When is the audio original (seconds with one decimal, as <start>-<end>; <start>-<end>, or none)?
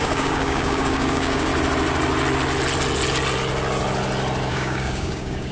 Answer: 1.5-4.5